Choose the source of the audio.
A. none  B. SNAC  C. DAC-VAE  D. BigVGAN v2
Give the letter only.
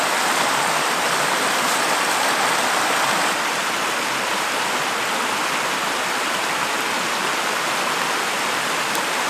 A